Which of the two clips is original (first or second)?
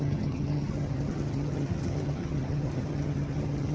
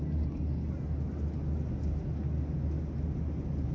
second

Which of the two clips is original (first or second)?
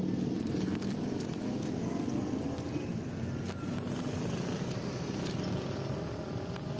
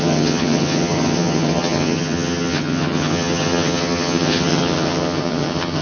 first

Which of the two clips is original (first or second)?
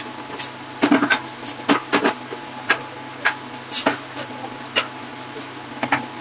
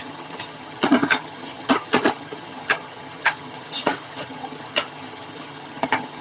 first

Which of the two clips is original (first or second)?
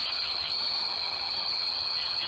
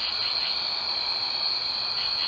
second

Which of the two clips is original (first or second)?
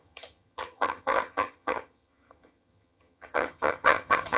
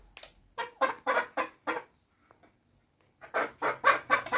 second